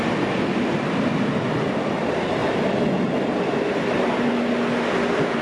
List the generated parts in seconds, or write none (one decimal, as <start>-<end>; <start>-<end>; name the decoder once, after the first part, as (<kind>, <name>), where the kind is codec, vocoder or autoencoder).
none